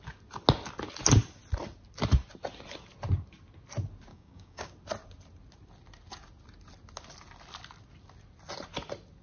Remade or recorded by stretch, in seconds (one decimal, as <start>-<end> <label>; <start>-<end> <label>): 0.0-4.1 recorded; 4.1-4.7 remade; 4.7-9.2 recorded